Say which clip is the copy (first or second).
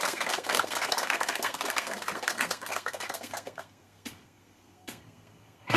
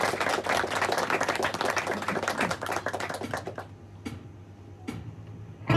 first